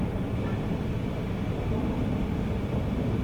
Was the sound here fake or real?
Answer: real